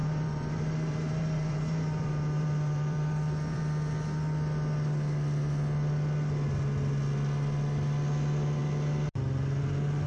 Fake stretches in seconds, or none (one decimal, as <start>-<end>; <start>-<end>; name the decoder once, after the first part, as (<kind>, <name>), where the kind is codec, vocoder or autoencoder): 0.0-3.6 (vocoder, BigVGAN v2)

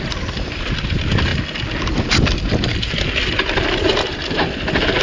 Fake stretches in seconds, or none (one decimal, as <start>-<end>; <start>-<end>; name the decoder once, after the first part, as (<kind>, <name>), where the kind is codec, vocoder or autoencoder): 0.0-1.3 (vocoder, BigVGAN v2); 4.3-5.0

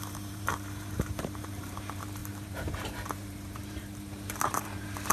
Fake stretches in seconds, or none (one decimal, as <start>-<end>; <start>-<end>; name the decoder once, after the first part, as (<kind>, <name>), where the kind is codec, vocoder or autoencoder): 0.0-5.1 (vocoder, BigVGAN v2)

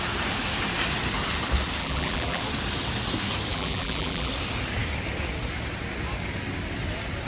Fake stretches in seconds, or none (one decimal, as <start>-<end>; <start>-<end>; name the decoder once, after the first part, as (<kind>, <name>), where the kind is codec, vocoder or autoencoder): 1.8-2.4 (vocoder, BigVGAN v2); 3.5-4.3